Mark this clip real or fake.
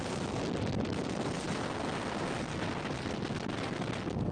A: real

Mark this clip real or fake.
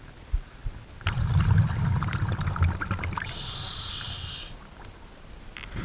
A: real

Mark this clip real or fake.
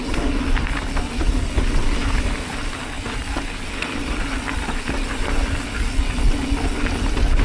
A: real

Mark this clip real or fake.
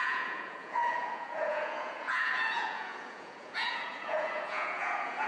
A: fake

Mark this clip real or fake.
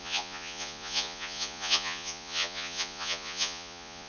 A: fake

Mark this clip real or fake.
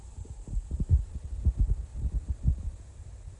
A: real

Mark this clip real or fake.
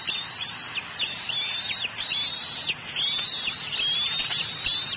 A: real